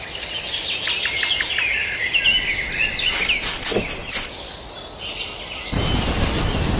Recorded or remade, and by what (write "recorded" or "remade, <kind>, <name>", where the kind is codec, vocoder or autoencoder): recorded